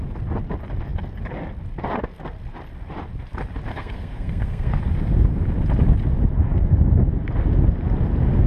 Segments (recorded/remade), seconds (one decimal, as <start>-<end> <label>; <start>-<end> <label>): 0.0-3.7 recorded; 3.7-4.8 remade; 4.8-8.5 recorded